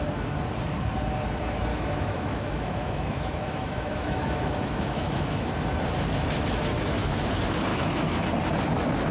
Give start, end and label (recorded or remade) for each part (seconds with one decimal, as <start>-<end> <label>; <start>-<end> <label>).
0.0-1.7 recorded; 1.7-5.5 remade; 5.5-7.7 recorded; 7.7-8.2 remade; 8.2-9.1 recorded